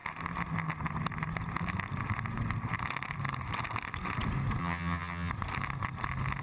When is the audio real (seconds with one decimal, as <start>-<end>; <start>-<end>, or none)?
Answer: 0.0-4.6; 5.3-6.4